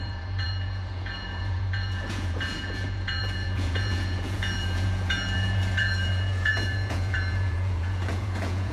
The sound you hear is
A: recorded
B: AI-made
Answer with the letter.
B